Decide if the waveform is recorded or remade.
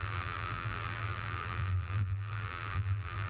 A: remade